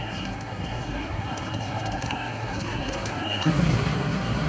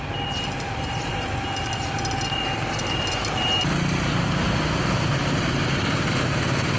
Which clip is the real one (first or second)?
second